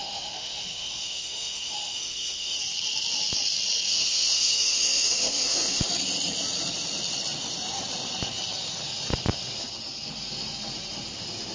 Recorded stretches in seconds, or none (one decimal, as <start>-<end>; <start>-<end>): 2.6-3.9; 5.9-11.5